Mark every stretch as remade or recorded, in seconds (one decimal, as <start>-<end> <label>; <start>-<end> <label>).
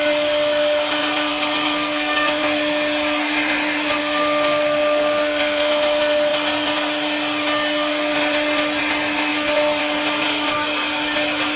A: 0.0-1.3 recorded; 1.3-2.4 remade; 2.4-4.0 recorded; 4.0-5.7 remade; 5.7-11.6 recorded